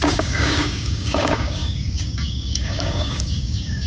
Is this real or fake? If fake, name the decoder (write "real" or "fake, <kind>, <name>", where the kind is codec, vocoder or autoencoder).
fake, codec, DAC